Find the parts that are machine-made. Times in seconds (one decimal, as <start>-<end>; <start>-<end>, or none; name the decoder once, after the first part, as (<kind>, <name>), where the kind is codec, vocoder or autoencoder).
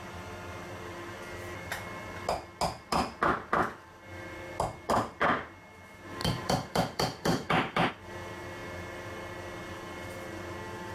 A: 6.2-7.9 (vocoder, BigVGAN v2)